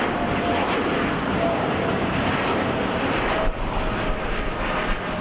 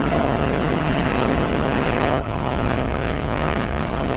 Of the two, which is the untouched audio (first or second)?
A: first